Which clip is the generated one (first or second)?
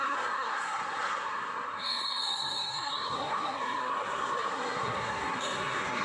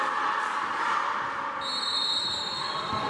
first